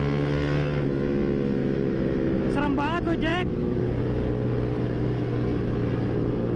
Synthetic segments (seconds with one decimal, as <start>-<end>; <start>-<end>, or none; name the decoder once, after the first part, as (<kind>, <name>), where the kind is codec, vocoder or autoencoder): 1.6-2.4 (autoencoder, DAC-VAE); 3.3-4.0